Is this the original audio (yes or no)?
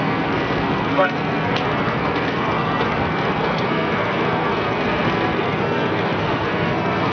no